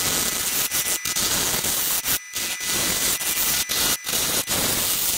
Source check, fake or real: real